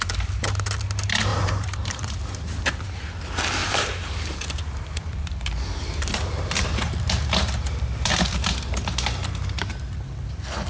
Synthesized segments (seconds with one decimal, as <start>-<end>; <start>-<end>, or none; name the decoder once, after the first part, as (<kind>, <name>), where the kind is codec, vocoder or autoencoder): 1.3-2.1 (vocoder, BigVGAN v2); 3.6-8.2